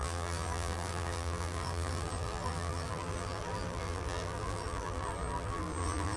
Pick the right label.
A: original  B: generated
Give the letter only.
B